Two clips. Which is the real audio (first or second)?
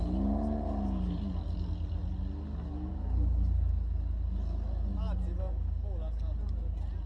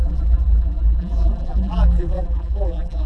first